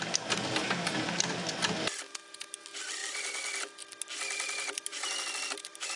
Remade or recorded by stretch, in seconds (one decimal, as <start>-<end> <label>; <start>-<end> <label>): 0.0-0.6 recorded; 0.6-1.4 remade; 1.4-3.0 recorded; 3.0-3.6 remade; 3.6-6.0 recorded